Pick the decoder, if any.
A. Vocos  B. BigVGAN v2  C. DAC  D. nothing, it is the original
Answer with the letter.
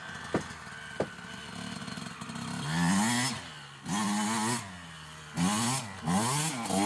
D